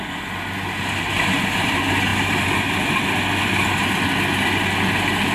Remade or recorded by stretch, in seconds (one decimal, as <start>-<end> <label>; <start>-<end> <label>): 0.0-5.3 recorded